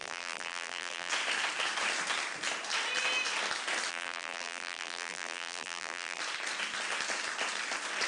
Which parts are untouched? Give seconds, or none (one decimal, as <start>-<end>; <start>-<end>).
1.1-3.9; 6.2-8.1